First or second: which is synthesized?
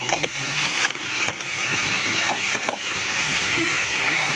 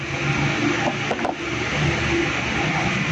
first